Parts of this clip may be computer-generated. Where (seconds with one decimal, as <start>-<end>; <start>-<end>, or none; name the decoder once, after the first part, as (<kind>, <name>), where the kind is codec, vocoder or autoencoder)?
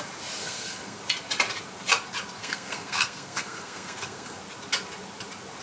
0.4-1.0 (codec, SNAC); 2.4-4.4